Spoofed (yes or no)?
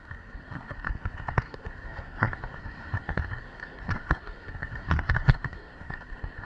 yes